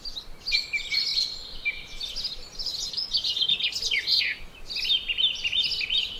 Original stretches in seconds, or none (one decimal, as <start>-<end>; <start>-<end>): 0.0-6.2

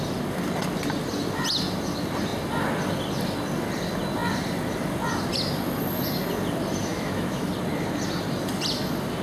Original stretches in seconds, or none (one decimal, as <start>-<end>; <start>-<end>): 0.0-6.9; 7.5-9.2

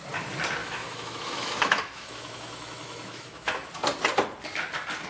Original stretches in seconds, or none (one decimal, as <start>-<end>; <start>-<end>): 0.0-0.6; 3.7-5.1